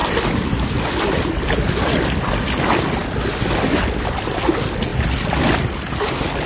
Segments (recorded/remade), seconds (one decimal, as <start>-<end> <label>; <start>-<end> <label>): 0.0-6.5 recorded